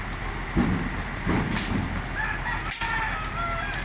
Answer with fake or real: real